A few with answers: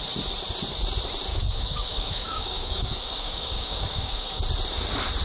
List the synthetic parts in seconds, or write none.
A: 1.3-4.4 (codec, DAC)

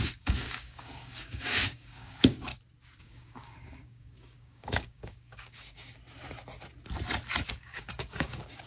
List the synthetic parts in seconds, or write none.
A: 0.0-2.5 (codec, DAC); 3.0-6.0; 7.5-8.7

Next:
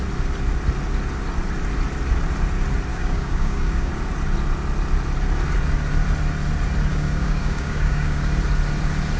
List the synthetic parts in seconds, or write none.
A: 2.9-3.9 (codec, DAC); 6.9-8.2

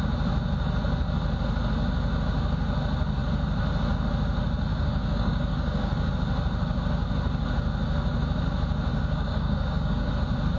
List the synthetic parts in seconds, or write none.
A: 4.7-6.1 (codec, DAC); 8.9-10.1